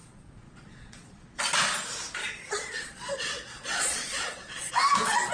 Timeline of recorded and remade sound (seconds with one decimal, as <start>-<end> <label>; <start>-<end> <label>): 0.0-1.4 remade; 1.4-2.2 recorded; 2.2-4.7 remade; 4.7-5.3 recorded